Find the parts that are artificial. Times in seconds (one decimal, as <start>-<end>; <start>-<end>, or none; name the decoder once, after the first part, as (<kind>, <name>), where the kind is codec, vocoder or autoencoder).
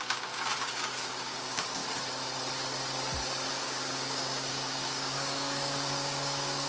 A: 0.0-1.8 (codec, DAC); 3.5-6.7